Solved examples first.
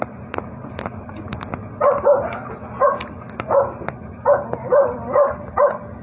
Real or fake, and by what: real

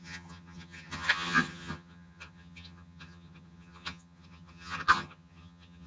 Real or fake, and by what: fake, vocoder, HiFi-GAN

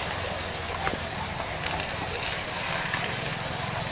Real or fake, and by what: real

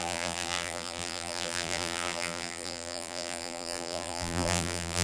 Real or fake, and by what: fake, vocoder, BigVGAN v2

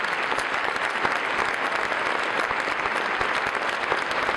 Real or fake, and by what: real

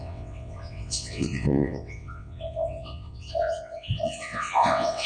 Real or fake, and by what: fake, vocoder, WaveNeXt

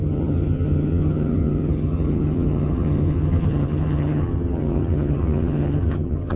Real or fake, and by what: fake, vocoder, HiFi-GAN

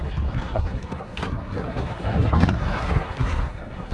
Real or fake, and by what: fake, codec, SNAC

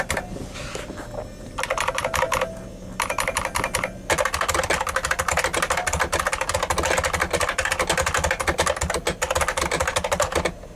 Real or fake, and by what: real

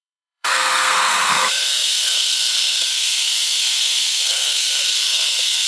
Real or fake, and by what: fake, codec, SNAC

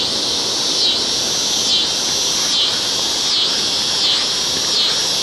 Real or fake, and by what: real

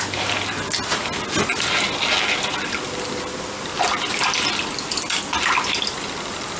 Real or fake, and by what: real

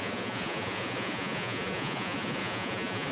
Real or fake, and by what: fake, vocoder, Vocos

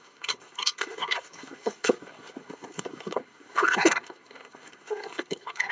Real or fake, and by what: fake, codec, SNAC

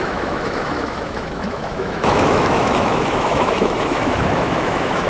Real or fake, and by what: fake, autoencoder, DAC-VAE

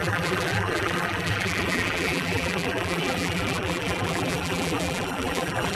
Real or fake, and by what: fake, vocoder, BigVGAN v2